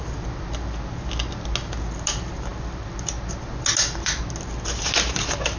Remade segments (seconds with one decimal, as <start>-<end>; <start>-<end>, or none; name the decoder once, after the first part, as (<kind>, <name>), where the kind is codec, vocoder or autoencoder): none